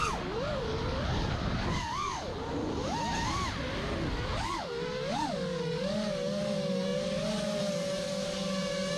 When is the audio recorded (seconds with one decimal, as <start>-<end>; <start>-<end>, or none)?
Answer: 2.3-4.1